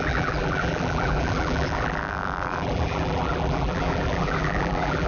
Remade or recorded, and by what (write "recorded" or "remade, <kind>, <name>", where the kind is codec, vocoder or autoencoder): remade, vocoder, BigVGAN v2